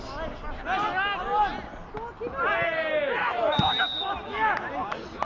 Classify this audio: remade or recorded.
recorded